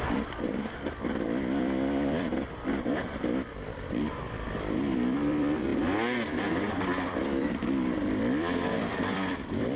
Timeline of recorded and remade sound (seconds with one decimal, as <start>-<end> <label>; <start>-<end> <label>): 0.0-5.7 remade; 5.7-6.7 recorded; 6.7-9.8 remade